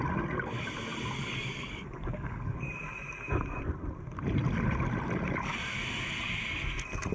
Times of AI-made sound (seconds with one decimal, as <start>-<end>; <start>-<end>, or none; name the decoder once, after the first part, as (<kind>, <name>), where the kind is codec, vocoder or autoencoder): 1.2-2.7 (codec, DAC)